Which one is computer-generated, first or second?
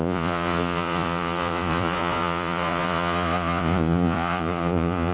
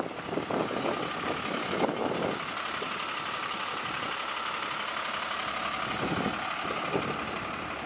first